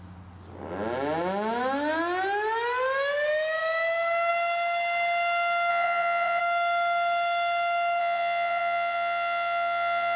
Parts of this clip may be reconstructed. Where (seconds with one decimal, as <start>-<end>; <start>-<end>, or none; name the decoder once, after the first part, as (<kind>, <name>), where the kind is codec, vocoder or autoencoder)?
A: 5.7-6.4 (vocoder, Vocos); 8.0-10.2